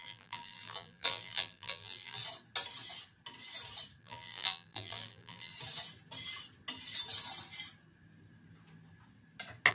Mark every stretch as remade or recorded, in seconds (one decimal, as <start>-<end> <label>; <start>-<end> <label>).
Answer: 0.0-2.2 remade; 2.2-4.0 recorded; 4.0-5.5 remade; 5.5-9.7 recorded